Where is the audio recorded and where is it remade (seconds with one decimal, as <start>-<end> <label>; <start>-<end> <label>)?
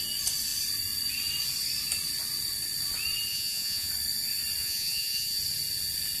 0.0-3.3 recorded; 3.3-3.9 remade; 3.9-4.6 recorded; 4.6-5.4 remade; 5.4-6.2 recorded